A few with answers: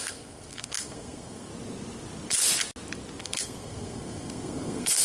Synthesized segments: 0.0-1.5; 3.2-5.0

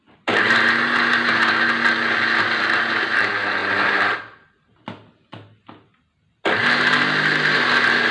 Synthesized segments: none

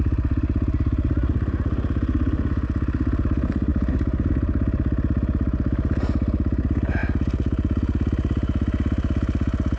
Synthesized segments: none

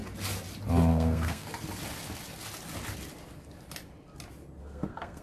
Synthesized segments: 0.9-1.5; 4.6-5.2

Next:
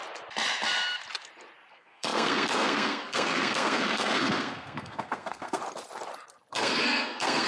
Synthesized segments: 1.7-5.6; 6.5-7.5